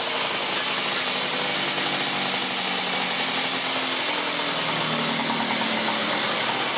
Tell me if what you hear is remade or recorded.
recorded